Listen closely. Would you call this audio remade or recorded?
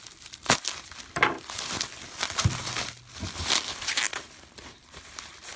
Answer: remade